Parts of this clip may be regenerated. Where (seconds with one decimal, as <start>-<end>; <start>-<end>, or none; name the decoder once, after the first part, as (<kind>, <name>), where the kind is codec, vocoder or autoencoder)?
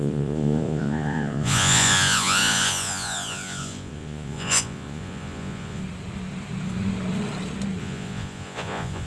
0.0-5.8 (vocoder, Vocos); 7.8-9.1